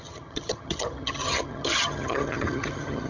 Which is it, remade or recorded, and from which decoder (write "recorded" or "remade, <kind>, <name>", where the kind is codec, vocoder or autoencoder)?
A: remade, vocoder, HiFi-GAN